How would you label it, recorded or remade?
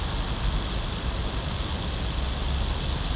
recorded